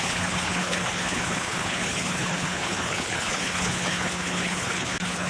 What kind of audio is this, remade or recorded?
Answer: remade